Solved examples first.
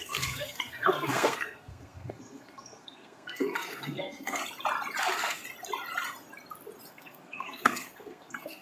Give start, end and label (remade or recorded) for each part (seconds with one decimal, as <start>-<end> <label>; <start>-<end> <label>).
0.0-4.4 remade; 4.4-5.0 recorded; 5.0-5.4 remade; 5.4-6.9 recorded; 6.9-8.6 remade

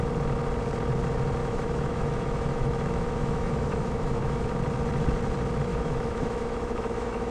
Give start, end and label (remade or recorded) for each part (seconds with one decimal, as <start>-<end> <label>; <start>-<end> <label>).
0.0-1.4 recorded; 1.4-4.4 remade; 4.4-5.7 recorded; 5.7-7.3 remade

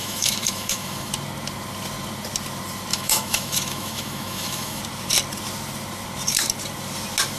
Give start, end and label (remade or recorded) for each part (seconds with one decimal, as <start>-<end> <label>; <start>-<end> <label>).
0.0-1.1 remade; 1.1-2.9 recorded; 2.9-4.8 remade; 4.8-7.4 recorded

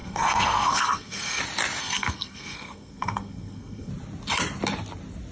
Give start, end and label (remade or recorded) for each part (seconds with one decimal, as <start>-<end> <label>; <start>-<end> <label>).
0.0-1.4 remade; 1.4-1.8 recorded; 1.8-3.9 remade; 3.9-5.3 recorded